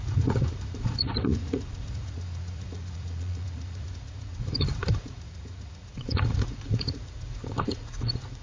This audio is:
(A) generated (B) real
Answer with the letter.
A